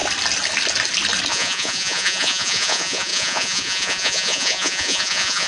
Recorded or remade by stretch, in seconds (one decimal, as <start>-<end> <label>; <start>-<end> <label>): 0.0-1.3 recorded; 1.3-5.5 remade